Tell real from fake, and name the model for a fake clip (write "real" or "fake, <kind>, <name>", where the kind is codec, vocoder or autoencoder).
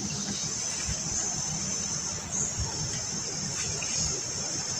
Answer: real